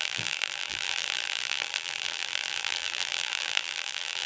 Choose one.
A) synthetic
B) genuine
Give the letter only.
A